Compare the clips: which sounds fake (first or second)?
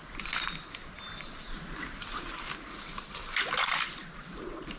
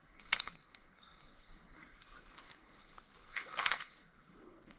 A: second